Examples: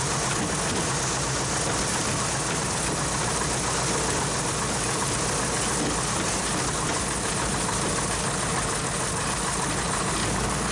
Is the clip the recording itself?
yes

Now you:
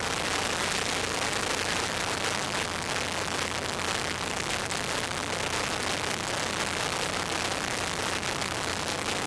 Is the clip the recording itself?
yes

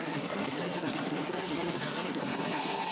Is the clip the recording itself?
no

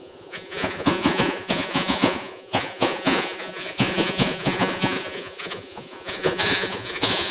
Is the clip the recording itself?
no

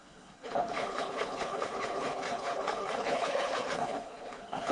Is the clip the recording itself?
no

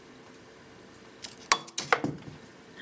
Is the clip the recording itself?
yes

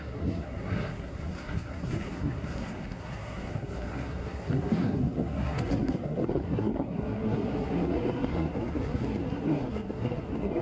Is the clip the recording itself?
no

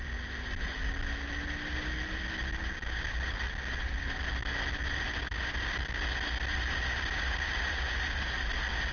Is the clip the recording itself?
yes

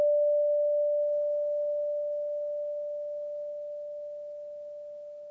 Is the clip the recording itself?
yes